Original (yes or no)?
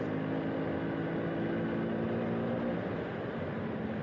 yes